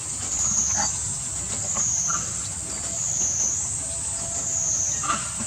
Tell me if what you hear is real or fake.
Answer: real